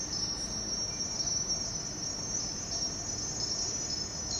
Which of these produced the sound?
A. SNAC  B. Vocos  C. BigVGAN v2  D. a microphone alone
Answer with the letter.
D